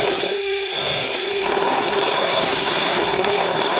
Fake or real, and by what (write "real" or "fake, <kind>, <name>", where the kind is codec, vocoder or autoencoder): fake, codec, SNAC